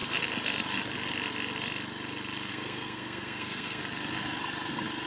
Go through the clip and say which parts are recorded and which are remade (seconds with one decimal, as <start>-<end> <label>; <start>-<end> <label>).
0.0-2.5 recorded; 2.5-3.8 remade; 3.8-5.1 recorded